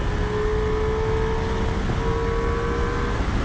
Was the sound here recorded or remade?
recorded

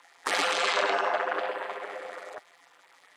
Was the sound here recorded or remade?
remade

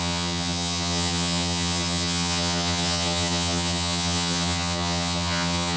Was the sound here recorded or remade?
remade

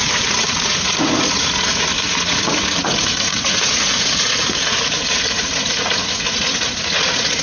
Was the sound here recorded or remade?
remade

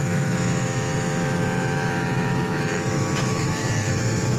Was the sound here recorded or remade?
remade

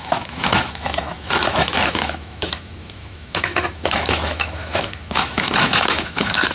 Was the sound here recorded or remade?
remade